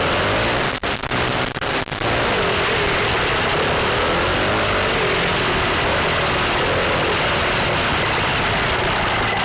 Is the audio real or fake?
real